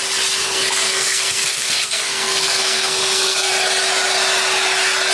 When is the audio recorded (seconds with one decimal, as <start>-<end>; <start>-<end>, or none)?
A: 0.0-0.4; 3.5-5.1